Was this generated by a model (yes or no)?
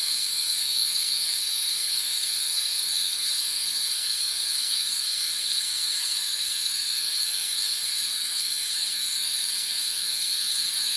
yes